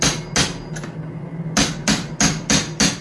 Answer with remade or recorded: recorded